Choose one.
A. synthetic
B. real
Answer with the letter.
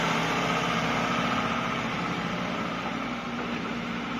A